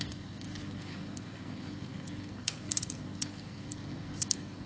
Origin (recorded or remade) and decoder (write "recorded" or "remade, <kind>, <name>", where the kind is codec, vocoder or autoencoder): remade, codec, SNAC